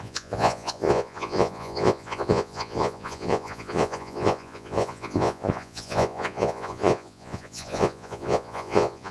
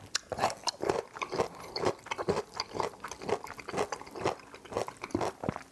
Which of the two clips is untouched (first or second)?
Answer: second